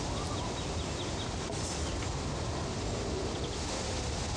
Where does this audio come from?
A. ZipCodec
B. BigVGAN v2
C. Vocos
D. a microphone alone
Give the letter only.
D